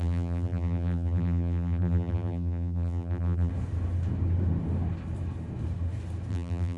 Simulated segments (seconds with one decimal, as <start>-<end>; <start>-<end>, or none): 0.0-3.5; 6.3-6.8